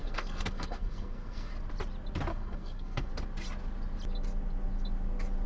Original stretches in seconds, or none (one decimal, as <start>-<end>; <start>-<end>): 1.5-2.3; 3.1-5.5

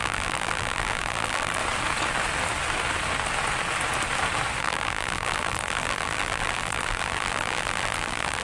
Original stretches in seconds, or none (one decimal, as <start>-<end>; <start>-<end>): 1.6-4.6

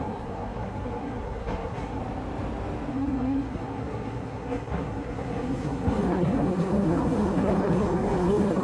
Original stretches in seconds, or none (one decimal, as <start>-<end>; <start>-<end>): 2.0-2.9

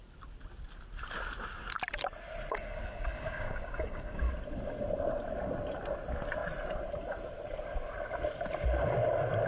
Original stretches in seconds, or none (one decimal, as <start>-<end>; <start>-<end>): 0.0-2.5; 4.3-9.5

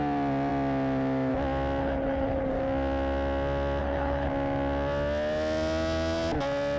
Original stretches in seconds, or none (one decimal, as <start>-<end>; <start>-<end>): 0.0-1.8; 2.5-3.8; 4.3-6.8

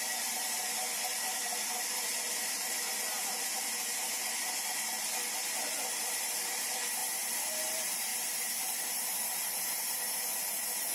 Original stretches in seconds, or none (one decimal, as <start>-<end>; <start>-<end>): 7.0-7.6; 8.1-10.9

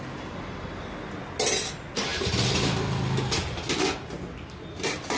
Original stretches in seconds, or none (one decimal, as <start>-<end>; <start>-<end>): 0.0-5.2

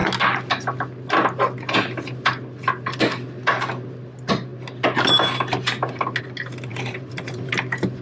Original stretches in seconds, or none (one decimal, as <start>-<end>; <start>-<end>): 0.0-6.7; 7.5-8.0